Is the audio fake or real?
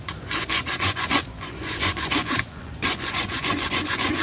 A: fake